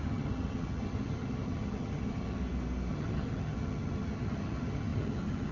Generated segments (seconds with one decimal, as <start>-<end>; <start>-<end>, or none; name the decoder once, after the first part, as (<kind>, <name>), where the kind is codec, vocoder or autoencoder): 0.0-2.4 (vocoder, HiFi-GAN); 2.9-5.5